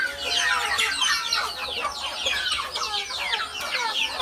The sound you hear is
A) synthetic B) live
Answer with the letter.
B